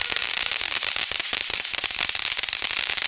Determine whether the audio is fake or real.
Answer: real